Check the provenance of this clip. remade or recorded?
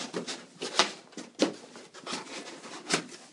recorded